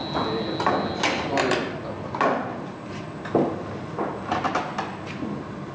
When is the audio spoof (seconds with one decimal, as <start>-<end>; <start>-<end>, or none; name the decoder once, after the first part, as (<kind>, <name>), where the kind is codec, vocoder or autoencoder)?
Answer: none